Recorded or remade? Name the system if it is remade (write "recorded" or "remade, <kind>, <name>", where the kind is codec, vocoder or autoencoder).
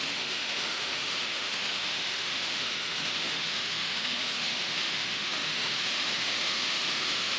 remade, autoencoder, DAC-VAE